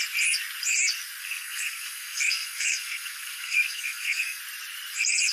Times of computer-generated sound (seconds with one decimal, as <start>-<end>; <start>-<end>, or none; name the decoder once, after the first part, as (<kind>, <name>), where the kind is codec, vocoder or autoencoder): 1.2-4.4 (codec, SNAC)